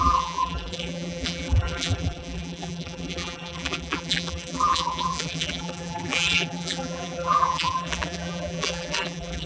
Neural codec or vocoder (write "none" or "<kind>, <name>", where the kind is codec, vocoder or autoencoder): vocoder, BigVGAN v2